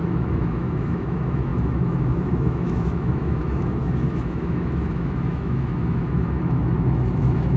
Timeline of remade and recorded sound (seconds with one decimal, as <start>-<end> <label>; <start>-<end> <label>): 0.0-7.6 remade